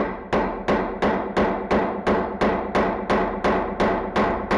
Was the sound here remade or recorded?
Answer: recorded